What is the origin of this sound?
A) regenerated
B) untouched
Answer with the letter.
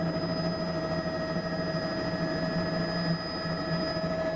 B